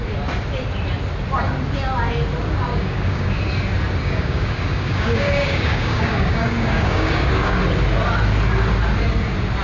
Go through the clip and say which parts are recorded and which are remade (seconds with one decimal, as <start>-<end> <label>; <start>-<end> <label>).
0.0-2.7 recorded; 2.7-3.4 remade; 3.4-4.0 recorded; 4.0-7.6 remade; 7.6-9.6 recorded